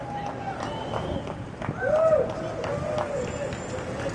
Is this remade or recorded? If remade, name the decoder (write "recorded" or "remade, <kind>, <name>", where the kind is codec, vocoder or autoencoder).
recorded